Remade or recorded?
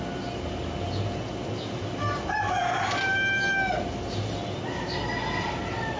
recorded